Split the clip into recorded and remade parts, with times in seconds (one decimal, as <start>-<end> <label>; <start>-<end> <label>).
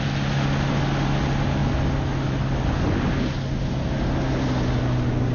0.0-5.3 recorded